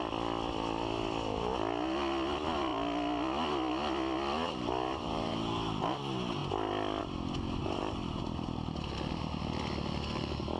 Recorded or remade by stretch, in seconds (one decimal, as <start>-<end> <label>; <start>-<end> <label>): 0.0-7.6 recorded; 7.6-8.2 remade; 8.2-10.6 recorded